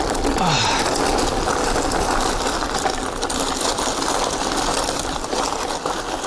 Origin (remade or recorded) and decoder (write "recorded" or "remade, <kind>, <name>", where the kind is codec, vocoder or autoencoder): recorded